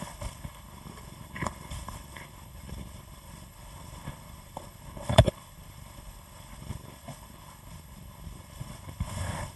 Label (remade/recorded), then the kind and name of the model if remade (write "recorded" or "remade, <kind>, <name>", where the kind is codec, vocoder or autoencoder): remade, codec, HILCodec